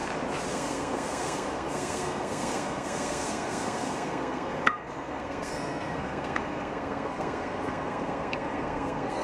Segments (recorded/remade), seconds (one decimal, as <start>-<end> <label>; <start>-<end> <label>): 0.0-0.5 recorded; 0.5-9.2 remade